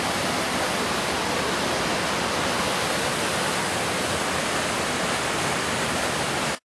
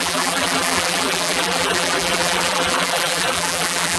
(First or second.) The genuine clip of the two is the first